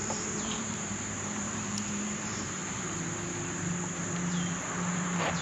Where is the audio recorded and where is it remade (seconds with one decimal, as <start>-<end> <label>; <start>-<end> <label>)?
0.0-2.6 remade; 2.6-4.6 recorded; 4.6-5.4 remade